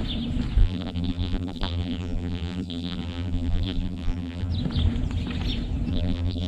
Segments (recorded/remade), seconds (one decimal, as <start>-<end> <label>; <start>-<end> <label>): 0.0-0.6 recorded; 0.6-4.5 remade; 4.5-5.9 recorded; 5.9-6.5 remade